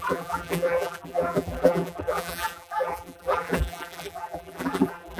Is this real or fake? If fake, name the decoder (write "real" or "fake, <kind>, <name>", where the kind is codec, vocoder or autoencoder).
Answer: fake, vocoder, BigVGAN v2